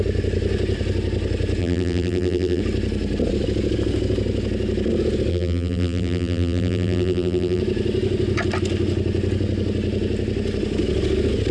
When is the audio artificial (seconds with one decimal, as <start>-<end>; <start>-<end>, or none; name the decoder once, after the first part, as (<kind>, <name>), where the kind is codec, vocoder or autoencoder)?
1.6-2.6 (vocoder, BigVGAN v2); 5.3-7.6

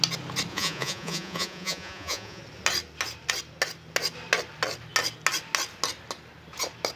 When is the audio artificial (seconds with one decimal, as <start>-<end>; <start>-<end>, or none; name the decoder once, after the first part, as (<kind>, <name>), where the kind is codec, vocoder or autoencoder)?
0.5-2.4 (vocoder, Vocos)

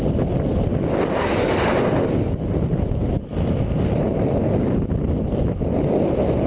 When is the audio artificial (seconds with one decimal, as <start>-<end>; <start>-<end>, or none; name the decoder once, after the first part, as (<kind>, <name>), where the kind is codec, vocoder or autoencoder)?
none

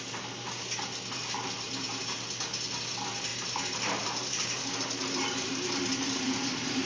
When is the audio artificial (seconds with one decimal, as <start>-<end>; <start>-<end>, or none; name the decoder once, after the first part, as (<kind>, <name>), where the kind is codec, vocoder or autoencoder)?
1.2-2.2 (vocoder, BigVGAN v2); 3.3-6.9

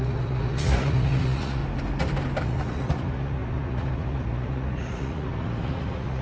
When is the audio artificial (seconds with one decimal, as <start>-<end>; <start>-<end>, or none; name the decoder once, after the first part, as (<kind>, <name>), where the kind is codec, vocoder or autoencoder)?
0.0-1.6 (vocoder, Vocos); 2.4-6.2